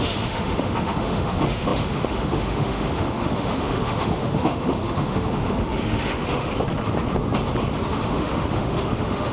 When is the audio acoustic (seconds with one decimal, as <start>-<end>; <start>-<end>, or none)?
6.5-7.9